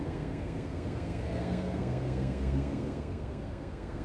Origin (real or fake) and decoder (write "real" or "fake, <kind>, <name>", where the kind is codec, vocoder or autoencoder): fake, codec, SNAC